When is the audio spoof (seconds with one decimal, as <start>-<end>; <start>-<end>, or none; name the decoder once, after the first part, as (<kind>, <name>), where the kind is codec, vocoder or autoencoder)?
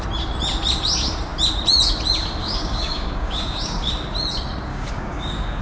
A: 2.4-3.9 (codec, DAC); 4.7-5.6